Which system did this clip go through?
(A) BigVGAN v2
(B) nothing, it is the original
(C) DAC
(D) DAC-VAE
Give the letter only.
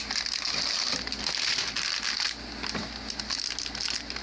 B